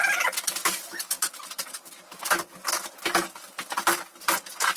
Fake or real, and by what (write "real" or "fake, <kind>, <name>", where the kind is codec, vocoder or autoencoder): real